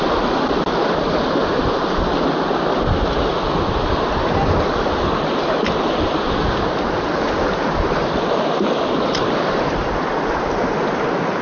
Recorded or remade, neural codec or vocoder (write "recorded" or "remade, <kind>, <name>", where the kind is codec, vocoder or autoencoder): recorded